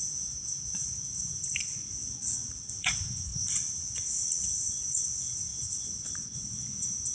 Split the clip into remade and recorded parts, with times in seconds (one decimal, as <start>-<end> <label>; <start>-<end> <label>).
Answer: 0.0-2.0 remade; 2.0-2.8 recorded; 2.8-3.3 remade; 3.3-4.4 recorded; 4.4-7.1 remade